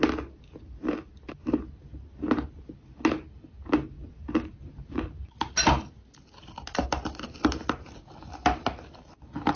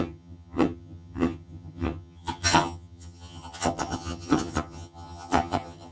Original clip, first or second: first